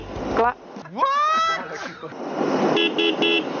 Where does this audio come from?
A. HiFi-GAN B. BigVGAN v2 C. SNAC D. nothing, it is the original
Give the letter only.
D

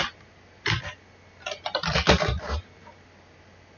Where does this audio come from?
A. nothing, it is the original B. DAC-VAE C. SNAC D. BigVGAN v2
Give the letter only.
A